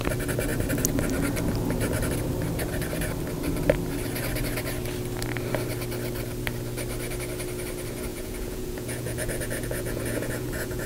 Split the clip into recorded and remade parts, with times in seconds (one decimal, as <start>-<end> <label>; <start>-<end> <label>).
0.0-8.1 recorded; 8.1-10.9 remade